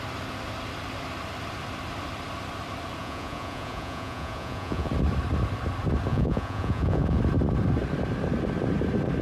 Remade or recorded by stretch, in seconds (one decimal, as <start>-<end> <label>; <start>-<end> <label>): 0.0-3.0 recorded; 3.0-4.9 remade; 4.9-6.1 recorded; 6.1-7.2 remade; 7.2-9.2 recorded

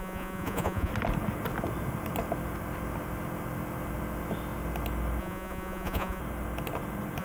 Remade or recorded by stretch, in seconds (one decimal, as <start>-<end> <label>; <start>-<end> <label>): 0.0-0.9 remade; 0.9-5.2 recorded; 5.2-6.2 remade; 6.2-7.2 recorded

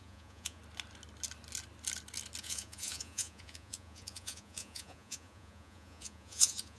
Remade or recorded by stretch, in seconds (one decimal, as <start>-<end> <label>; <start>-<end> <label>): 0.0-0.6 remade; 0.6-2.4 recorded; 2.4-6.8 remade

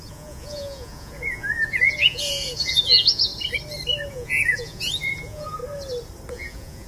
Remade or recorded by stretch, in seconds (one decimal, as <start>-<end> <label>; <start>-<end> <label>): 0.0-3.3 remade; 3.3-4.1 recorded; 4.1-5.6 remade; 5.6-6.3 recorded; 6.3-6.9 remade

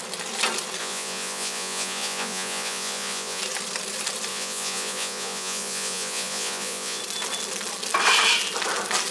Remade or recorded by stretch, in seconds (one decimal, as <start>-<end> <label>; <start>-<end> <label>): 0.0-0.8 recorded; 0.8-3.4 remade; 3.4-4.3 recorded; 4.3-7.0 remade; 7.0-9.1 recorded

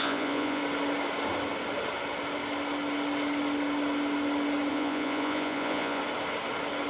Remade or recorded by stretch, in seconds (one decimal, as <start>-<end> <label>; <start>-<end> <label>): 0.0-0.6 remade; 0.6-4.7 recorded; 4.7-6.0 remade; 6.0-6.9 recorded